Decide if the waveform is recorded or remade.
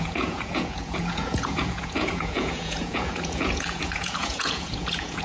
remade